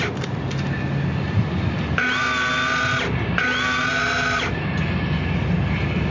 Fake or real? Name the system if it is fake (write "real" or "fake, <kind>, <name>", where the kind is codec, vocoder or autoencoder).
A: real